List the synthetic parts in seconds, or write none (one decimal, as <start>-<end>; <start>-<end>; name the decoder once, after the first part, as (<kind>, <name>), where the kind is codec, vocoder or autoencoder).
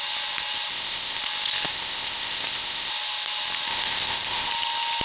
0.7-1.2 (codec, ZipCodec); 1.7-2.9; 3.7-4.5